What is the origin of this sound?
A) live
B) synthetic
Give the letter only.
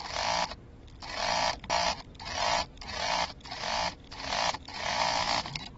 A